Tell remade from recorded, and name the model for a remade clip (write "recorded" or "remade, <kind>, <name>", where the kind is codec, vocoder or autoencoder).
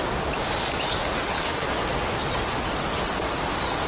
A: recorded